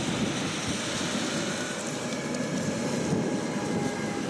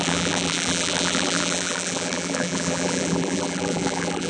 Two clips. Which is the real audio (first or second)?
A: first